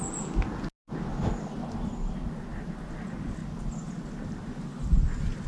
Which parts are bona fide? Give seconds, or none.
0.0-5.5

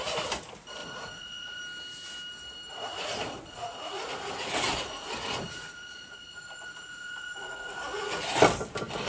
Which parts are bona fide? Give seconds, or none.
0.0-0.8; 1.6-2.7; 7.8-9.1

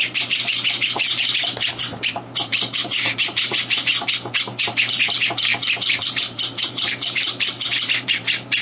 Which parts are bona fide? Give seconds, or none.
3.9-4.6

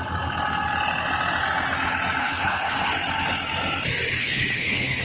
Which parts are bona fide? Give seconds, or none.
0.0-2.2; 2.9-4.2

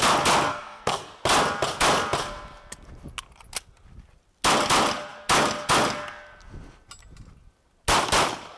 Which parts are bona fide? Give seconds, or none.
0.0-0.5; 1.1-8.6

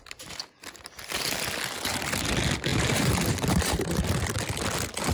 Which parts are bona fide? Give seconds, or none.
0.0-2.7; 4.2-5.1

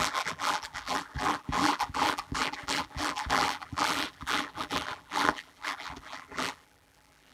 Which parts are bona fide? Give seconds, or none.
none